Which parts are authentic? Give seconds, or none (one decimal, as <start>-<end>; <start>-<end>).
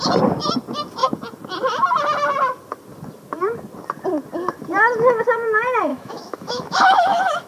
0.0-5.9